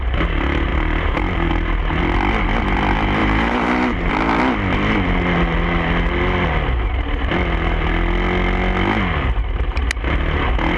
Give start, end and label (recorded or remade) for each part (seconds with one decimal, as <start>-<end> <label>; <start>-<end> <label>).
0.0-0.7 recorded; 0.7-1.5 remade; 1.5-3.2 recorded; 3.2-4.1 remade; 4.1-10.8 recorded